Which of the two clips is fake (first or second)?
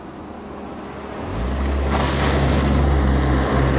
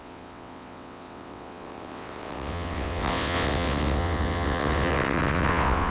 second